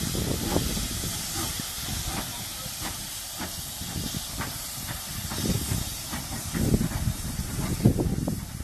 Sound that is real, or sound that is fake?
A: real